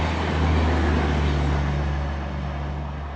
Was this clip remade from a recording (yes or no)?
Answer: no